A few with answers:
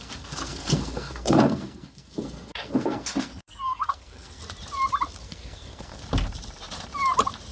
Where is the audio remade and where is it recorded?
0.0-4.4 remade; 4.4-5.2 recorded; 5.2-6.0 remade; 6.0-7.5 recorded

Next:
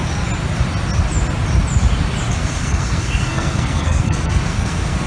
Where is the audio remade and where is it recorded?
0.0-2.3 recorded; 2.3-5.1 remade

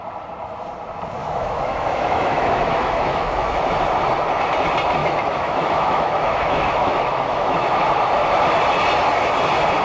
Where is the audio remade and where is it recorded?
0.0-1.2 recorded; 1.2-3.6 remade; 3.6-5.0 recorded; 5.0-7.7 remade; 7.7-9.8 recorded

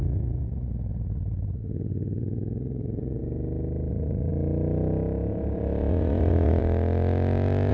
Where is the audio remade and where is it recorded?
0.0-3.2 remade; 3.2-3.9 recorded; 3.9-4.3 remade; 4.3-5.9 recorded; 5.9-6.6 remade; 6.6-7.7 recorded

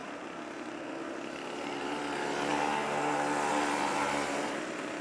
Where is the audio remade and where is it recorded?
0.0-5.0 recorded

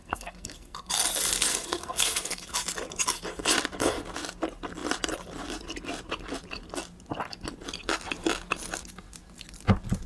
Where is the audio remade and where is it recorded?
0.0-0.9 remade; 0.9-1.5 recorded; 1.5-2.5 remade; 2.5-10.1 recorded

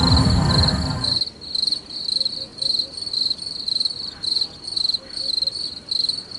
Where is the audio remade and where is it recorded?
0.0-6.4 recorded